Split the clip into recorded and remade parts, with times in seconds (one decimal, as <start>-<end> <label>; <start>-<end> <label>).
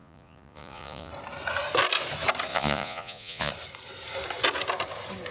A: 0.0-1.1 remade; 1.1-2.5 recorded; 2.5-3.5 remade; 3.5-5.3 recorded